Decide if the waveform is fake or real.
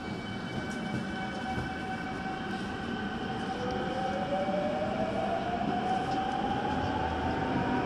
real